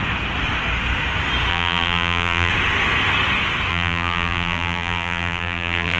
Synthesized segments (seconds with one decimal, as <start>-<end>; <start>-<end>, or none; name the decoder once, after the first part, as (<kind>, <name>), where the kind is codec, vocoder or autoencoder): 1.5-2.5 (vocoder, BigVGAN v2); 3.7-6.0